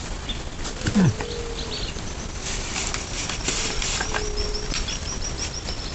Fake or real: real